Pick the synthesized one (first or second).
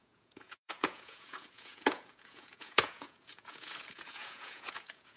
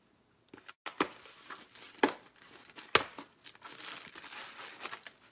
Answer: first